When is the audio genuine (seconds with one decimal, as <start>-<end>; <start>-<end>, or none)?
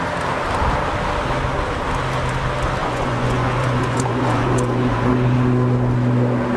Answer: 0.0-2.8; 5.1-6.6